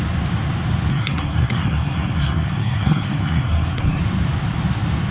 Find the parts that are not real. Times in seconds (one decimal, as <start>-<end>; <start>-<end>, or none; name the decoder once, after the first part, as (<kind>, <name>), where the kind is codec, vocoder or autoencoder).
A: 0.9-4.0 (codec, SNAC)